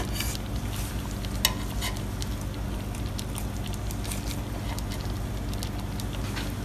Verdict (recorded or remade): recorded